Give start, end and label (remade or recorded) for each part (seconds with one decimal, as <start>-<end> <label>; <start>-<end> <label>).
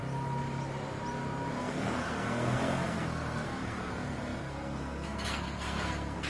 0.0-1.6 recorded; 1.6-6.3 remade